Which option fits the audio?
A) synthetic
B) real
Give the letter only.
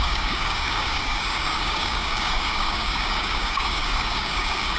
A